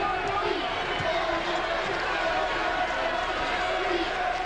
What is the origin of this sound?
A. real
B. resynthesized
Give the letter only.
B